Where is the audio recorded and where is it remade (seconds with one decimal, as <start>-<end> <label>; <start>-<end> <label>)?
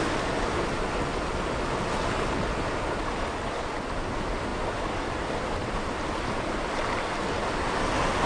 0.0-8.3 recorded